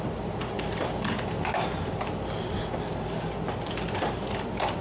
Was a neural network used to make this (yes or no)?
no